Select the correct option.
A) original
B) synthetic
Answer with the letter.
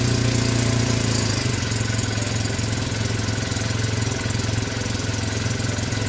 A